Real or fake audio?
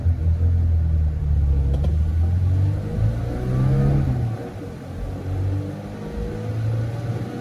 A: real